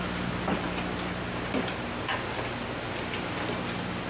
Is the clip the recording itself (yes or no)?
yes